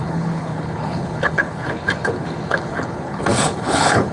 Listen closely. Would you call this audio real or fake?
fake